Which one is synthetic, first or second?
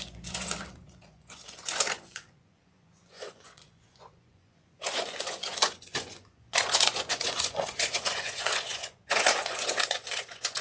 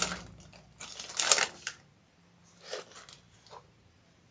first